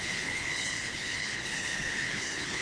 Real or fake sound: fake